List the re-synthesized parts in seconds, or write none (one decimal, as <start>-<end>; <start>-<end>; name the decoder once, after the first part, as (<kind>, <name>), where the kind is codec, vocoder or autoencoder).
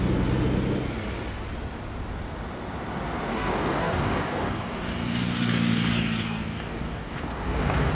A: 3.3-7.9 (codec, DAC)